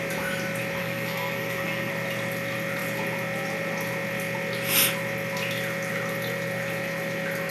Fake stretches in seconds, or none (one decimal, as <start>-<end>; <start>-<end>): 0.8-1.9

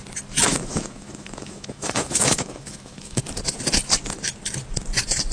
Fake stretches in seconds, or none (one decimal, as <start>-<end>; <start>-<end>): 0.5-3.2

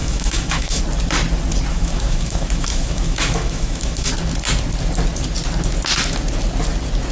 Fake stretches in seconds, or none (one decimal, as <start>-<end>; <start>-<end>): 0.0-0.8; 1.7-4.1

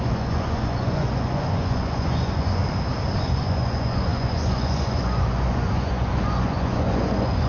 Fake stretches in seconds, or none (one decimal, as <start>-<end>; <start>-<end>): 0.0-2.6; 3.2-7.5

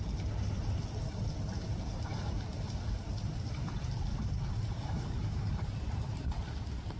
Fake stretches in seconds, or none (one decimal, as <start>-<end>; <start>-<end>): none